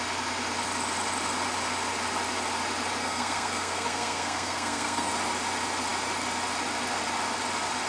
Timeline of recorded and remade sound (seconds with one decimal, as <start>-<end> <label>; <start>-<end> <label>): 0.0-3.0 recorded; 3.0-5.1 remade; 5.1-7.9 recorded